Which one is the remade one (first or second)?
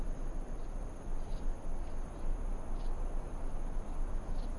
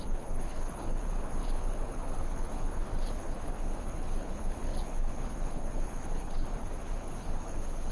second